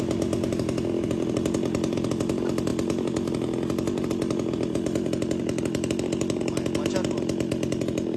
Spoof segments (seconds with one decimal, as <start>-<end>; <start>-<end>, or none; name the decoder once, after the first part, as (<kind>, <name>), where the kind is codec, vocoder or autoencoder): none